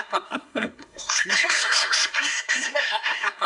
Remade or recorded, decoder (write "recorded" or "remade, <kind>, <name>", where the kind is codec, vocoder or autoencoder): remade, codec, SNAC